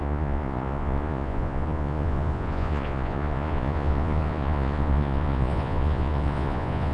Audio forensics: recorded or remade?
remade